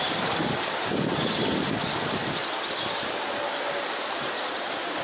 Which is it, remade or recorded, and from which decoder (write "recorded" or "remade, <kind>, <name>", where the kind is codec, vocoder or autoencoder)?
remade, vocoder, BigVGAN v2